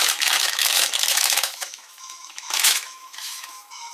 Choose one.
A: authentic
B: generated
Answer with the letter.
B